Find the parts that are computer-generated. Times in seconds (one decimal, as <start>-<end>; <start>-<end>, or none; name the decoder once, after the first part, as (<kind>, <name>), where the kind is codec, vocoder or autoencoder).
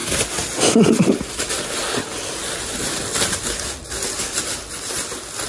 none